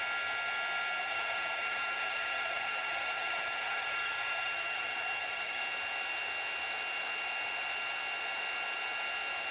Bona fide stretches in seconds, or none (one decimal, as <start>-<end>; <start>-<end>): 0.0-1.0; 5.6-9.5